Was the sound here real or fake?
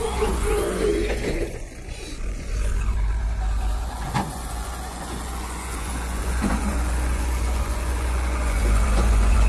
fake